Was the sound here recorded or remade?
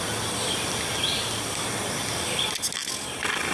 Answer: recorded